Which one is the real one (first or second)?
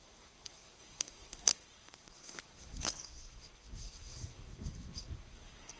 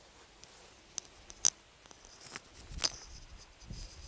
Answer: second